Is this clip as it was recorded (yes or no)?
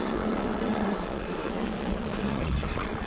no